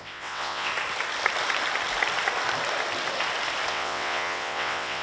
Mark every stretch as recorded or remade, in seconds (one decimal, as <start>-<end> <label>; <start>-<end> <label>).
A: 0.0-0.7 remade; 0.7-3.7 recorded; 3.7-5.0 remade